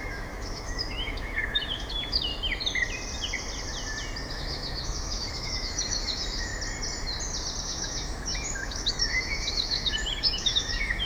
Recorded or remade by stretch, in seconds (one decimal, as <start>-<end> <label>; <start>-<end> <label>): 0.0-2.3 remade; 2.3-4.3 recorded; 4.3-6.5 remade; 6.5-7.6 recorded; 7.6-11.1 remade